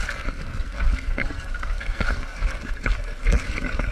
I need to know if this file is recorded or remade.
remade